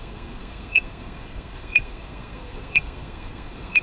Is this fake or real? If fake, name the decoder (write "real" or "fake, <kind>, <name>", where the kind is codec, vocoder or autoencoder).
fake, codec, SNAC